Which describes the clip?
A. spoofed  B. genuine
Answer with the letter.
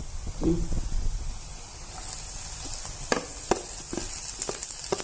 B